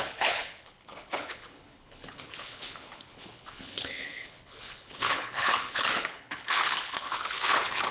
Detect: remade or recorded remade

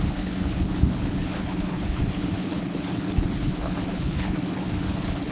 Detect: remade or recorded remade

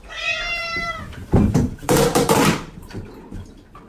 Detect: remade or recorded remade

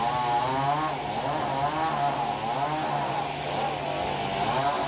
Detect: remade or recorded recorded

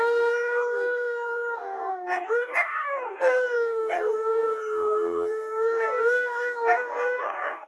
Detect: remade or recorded remade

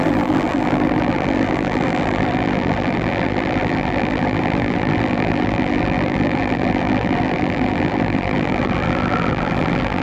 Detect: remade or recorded remade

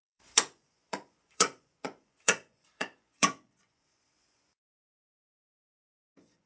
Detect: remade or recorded remade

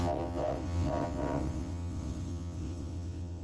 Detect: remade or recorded remade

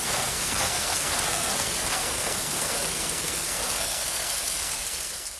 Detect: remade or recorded remade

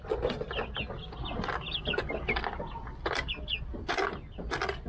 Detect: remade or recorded recorded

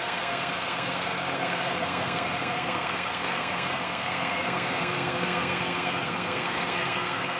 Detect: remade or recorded remade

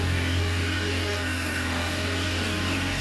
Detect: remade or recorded remade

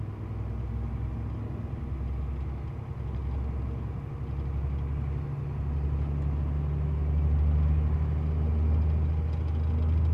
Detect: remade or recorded recorded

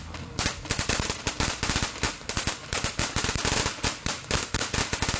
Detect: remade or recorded recorded